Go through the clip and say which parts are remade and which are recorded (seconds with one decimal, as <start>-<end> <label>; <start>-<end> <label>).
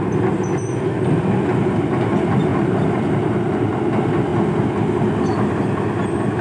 0.0-6.4 recorded